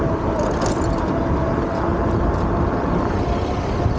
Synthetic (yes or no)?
no